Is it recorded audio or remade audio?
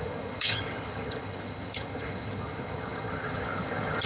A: remade